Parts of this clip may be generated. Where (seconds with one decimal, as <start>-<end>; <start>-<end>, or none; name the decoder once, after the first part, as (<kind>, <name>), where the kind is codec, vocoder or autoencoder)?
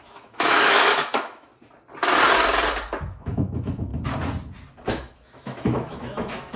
0.0-1.5 (autoencoder, DAC-VAE); 3.0-3.9; 4.9-6.6